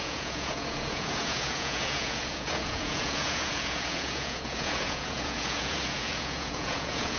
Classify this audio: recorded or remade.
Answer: remade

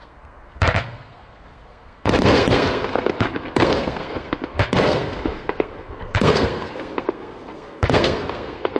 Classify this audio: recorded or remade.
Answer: remade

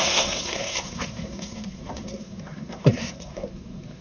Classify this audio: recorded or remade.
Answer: remade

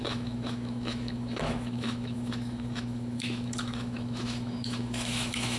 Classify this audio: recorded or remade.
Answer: remade